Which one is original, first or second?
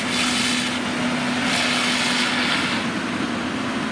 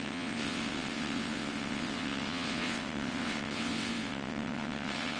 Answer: first